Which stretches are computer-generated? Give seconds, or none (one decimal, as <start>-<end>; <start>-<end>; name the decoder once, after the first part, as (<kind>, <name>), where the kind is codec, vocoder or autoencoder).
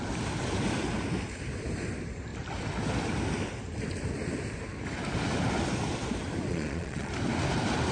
6.5-7.1 (vocoder, Vocos)